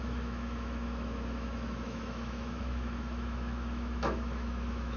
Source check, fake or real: fake